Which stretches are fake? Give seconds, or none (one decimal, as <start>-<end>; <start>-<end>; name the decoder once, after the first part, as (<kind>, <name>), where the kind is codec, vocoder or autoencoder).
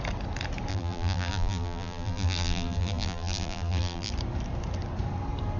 0.7-4.1 (vocoder, BigVGAN v2)